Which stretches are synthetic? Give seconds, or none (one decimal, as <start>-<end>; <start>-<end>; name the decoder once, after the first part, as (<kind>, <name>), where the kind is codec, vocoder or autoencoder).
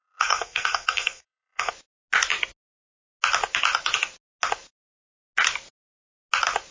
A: 0.0-1.7 (codec, SNAC)